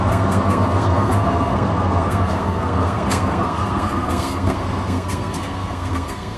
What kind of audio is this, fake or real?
fake